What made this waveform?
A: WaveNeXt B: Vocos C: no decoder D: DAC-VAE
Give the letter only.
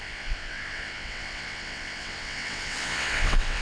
A